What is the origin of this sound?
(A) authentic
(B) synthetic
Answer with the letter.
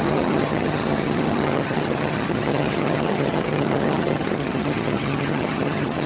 B